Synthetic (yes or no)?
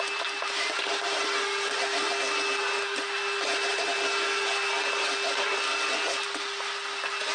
no